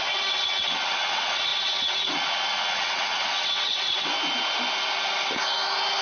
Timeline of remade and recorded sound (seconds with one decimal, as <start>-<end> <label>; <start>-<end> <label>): 0.0-4.1 remade; 4.1-6.0 recorded